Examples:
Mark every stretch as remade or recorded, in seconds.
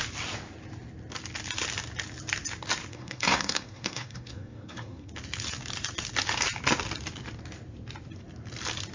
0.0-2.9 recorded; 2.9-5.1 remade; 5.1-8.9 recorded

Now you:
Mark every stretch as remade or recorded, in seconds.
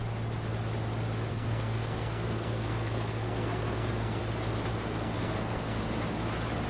0.0-1.3 recorded; 1.3-4.2 remade; 4.2-4.7 recorded; 4.7-5.8 remade; 5.8-6.7 recorded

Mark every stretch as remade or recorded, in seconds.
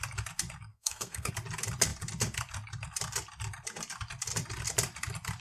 0.0-0.7 recorded; 0.7-1.3 remade; 1.3-5.4 recorded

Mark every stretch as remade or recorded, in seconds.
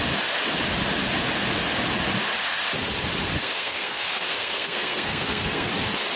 0.0-3.4 recorded; 3.4-5.7 remade; 5.7-6.2 recorded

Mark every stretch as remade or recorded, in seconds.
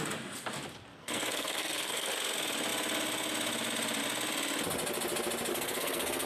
0.0-0.9 recorded; 0.9-2.1 remade; 2.1-5.5 recorded; 5.5-6.3 remade